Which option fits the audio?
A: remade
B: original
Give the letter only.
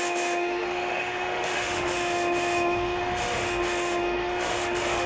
A